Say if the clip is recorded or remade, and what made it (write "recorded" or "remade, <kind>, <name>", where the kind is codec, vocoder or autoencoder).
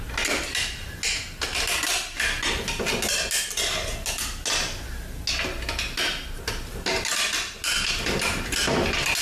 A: recorded